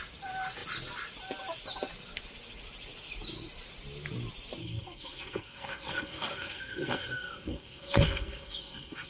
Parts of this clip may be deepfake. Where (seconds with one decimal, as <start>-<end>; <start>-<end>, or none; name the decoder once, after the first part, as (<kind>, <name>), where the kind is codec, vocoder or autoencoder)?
4.6-9.1 (codec, SNAC)